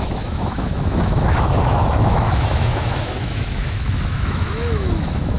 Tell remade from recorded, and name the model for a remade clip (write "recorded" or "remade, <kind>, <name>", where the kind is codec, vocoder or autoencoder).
remade, autoencoder, DAC-VAE